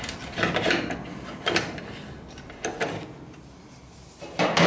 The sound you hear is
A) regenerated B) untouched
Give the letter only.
B